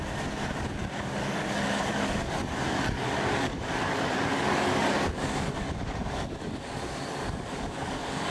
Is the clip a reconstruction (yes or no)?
yes